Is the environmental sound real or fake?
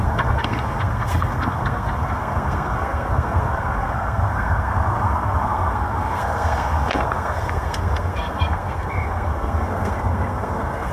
fake